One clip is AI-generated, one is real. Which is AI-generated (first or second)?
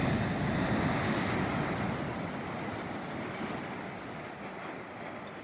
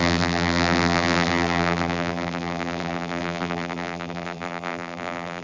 second